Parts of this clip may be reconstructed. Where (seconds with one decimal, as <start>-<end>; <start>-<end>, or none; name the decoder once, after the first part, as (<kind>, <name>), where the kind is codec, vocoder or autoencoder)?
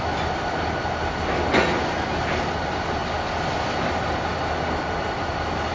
none